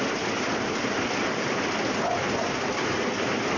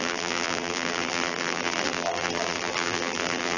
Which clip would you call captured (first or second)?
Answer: first